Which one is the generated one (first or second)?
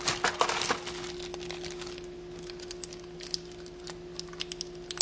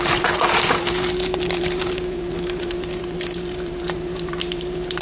second